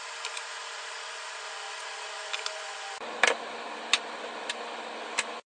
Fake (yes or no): no